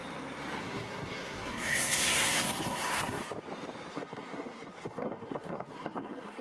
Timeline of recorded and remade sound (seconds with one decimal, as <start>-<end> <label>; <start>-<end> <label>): 0.0-0.6 recorded; 0.6-3.2 remade; 3.2-3.9 recorded; 3.9-6.4 remade